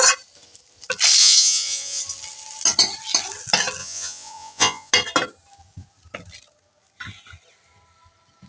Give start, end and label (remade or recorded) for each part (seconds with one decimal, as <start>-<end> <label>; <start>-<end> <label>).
0.0-1.2 recorded; 1.2-2.0 remade; 2.0-3.8 recorded; 3.8-4.9 remade; 4.9-8.5 recorded